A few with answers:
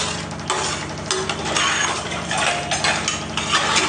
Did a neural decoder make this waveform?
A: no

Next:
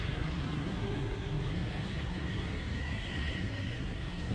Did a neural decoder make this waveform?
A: yes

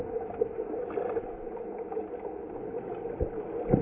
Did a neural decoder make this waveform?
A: no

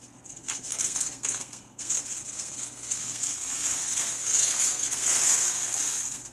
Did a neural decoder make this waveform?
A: yes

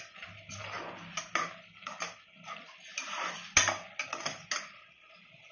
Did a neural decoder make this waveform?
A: no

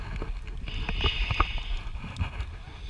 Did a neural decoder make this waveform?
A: no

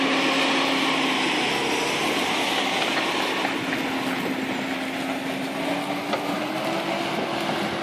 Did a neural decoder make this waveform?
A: no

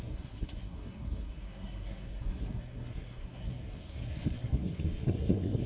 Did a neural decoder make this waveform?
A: yes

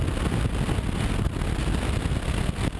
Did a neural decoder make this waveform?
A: no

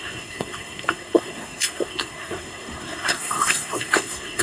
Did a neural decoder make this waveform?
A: yes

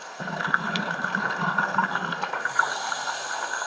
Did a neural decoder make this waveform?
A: yes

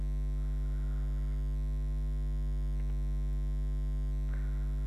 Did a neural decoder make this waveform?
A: no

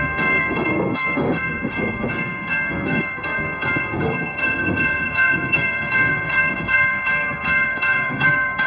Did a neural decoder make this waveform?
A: yes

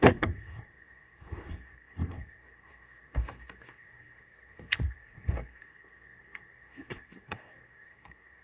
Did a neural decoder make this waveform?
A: yes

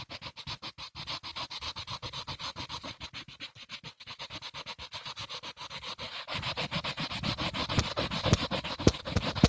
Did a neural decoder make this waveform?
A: no